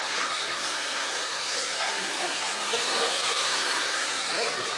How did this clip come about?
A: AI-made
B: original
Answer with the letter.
A